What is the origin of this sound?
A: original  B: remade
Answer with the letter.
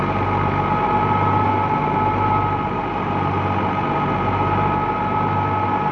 A